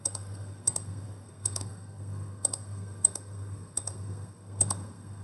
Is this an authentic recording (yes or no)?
no